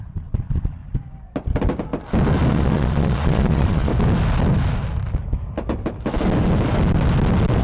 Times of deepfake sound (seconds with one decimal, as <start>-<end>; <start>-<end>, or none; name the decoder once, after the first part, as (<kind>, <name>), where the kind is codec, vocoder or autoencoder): 0.0-0.8 (vocoder, Vocos); 2.5-3.9